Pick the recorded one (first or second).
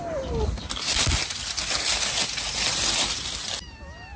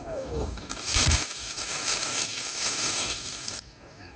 first